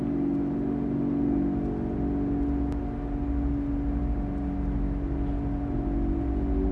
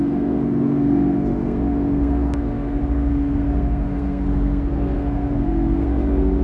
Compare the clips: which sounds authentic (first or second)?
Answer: first